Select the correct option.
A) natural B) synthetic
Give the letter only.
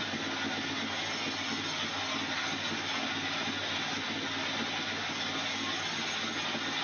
A